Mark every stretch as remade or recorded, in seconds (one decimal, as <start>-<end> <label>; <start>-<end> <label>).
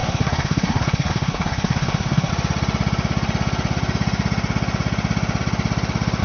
0.0-2.3 remade; 2.3-6.2 recorded